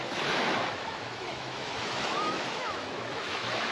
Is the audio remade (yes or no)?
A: yes